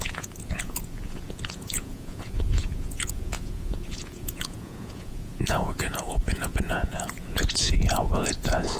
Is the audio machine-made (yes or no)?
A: yes